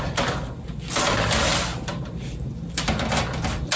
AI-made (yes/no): no